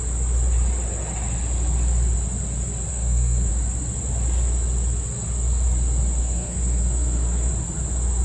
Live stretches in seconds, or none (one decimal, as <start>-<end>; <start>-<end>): 0.0-2.9; 3.5-6.2; 7.5-8.2